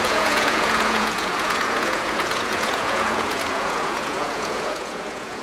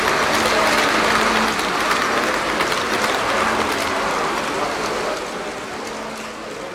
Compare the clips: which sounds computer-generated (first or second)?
first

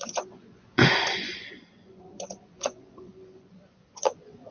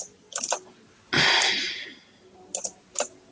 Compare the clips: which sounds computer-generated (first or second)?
first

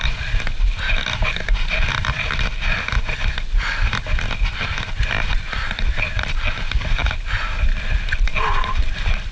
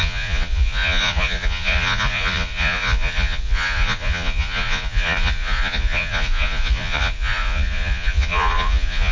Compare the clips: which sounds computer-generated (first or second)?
second